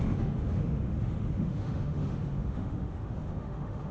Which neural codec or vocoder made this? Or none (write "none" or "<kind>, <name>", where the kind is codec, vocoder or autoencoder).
autoencoder, DAC-VAE